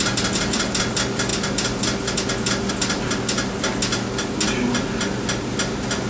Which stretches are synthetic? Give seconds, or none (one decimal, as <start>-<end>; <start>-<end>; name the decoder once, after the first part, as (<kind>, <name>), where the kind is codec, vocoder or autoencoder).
none